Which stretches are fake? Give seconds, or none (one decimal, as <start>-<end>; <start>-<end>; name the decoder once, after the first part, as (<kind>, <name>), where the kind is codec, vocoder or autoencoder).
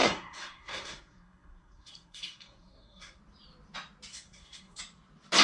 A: 0.0-3.2 (codec, SNAC); 4.1-4.8